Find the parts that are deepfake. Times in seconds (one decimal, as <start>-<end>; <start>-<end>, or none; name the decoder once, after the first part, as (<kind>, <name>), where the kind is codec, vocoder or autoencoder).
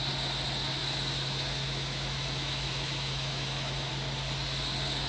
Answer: 0.8-3.9 (autoencoder, DAC-VAE)